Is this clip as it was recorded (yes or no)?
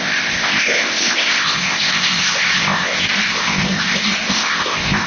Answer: no